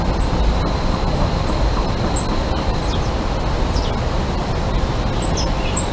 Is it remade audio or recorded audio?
recorded